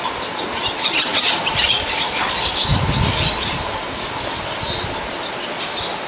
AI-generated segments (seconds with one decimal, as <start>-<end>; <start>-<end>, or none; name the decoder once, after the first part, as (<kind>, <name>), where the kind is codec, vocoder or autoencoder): 1.1-1.7 (vocoder, BigVGAN v2)